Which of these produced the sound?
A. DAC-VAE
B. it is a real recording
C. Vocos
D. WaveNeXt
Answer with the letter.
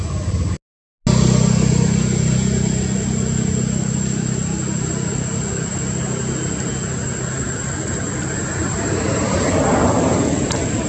B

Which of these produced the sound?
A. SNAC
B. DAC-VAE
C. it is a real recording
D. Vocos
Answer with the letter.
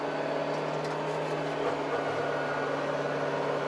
C